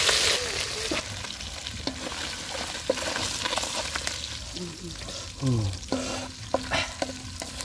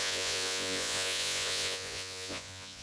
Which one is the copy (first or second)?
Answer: second